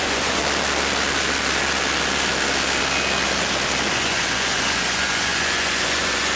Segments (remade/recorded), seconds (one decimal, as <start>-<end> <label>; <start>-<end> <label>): 0.0-0.4 remade; 0.4-3.9 recorded; 3.9-6.4 remade